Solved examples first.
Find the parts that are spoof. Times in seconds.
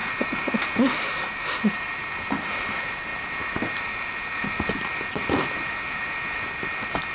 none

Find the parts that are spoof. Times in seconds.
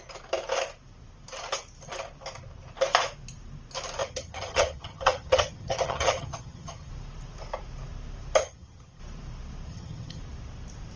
4.0-6.9 (vocoder, HiFi-GAN); 8.4-9.0; 9.7-10.2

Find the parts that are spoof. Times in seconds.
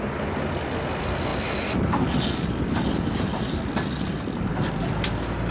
none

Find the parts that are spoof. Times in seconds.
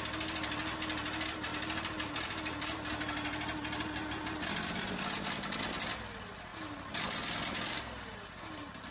none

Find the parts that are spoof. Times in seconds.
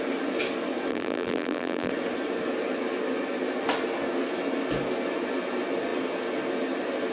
0.9-1.9 (vocoder, BigVGAN v2)